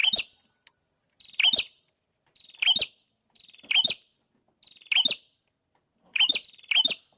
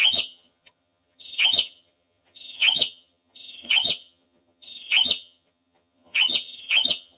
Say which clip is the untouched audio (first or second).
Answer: first